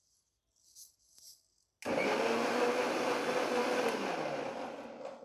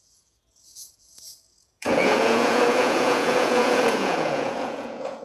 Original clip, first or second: first